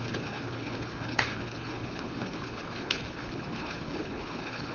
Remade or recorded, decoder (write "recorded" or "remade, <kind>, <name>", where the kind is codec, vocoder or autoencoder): remade, codec, HILCodec